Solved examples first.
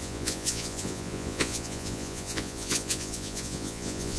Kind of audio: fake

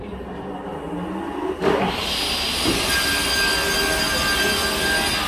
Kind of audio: real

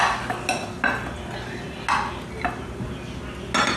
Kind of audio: real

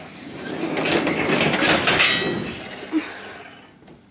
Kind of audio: real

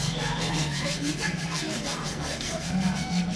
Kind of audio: fake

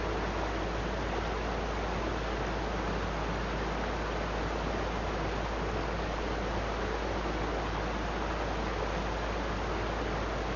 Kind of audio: real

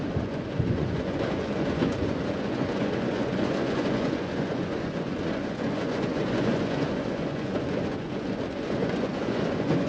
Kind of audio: fake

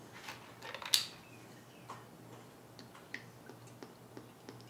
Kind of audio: real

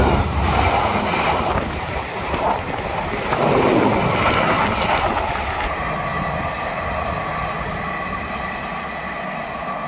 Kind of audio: real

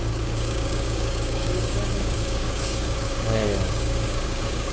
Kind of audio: fake